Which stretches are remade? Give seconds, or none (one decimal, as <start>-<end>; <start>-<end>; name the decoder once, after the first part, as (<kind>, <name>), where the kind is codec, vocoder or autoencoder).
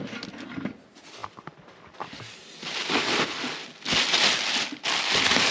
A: 1.2-2.2 (vocoder, BigVGAN v2)